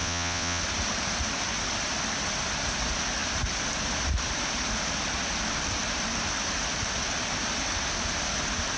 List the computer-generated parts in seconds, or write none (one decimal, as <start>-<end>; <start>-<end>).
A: 0.0-0.6